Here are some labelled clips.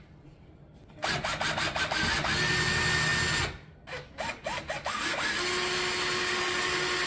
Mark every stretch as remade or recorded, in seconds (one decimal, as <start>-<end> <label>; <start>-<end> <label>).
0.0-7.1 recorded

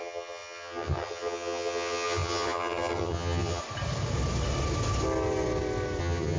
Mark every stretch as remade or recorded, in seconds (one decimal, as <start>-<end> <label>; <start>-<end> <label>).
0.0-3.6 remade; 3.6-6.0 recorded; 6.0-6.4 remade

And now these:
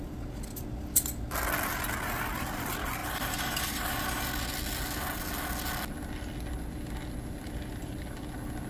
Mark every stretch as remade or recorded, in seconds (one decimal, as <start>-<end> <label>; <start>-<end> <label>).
0.0-3.0 recorded; 3.0-4.2 remade; 4.2-8.7 recorded